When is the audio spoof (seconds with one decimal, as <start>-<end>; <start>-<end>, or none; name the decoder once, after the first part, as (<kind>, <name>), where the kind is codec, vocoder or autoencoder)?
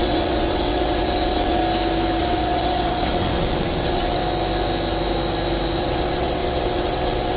0.0-1.6 (vocoder, WaveNeXt); 2.2-4.2; 5.8-7.4